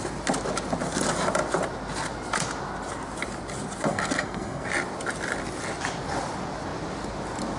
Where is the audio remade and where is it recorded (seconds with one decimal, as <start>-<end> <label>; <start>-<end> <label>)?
0.0-3.9 recorded; 3.9-4.7 remade; 4.7-7.6 recorded